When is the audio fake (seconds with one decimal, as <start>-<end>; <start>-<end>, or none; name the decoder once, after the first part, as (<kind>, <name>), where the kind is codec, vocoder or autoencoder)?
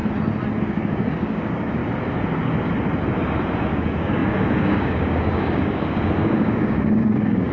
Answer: 0.6-1.8 (codec, DAC); 3.7-7.5